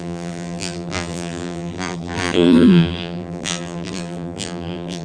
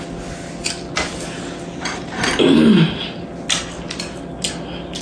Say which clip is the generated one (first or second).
first